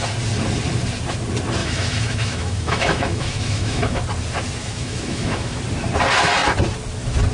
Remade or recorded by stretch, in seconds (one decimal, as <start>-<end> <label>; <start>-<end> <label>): 0.0-1.6 recorded; 1.6-4.0 remade; 4.0-4.6 recorded; 4.6-5.6 remade; 5.6-7.3 recorded